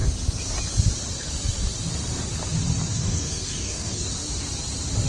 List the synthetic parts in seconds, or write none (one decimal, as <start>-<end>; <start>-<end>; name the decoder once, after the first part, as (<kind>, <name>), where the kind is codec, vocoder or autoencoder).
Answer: 2.9-4.1 (codec, DAC)